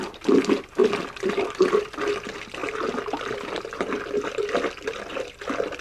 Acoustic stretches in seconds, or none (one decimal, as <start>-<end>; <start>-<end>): 0.0-5.8